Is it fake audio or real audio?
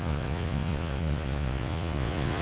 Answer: fake